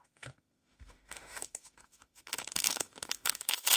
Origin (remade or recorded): remade